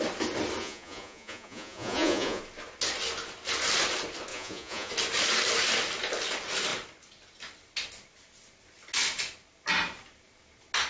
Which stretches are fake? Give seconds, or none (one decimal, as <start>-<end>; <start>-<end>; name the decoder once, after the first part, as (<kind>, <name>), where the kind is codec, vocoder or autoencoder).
0.6-2.4 (vocoder, Vocos); 4.3-4.9